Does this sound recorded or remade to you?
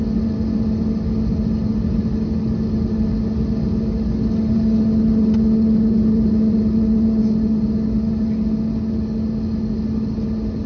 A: recorded